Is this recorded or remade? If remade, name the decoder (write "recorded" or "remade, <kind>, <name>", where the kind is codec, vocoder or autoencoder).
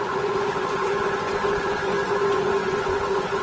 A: remade, vocoder, Vocos